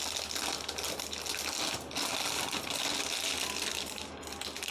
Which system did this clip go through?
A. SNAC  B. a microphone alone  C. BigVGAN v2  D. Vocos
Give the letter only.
B